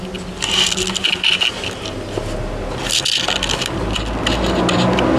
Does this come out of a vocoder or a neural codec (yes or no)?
no